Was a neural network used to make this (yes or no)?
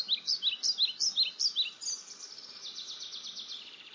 no